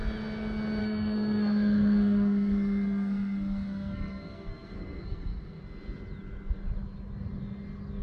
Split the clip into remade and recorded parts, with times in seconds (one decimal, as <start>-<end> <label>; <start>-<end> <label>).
0.0-0.8 recorded; 0.8-5.6 remade; 5.6-8.0 recorded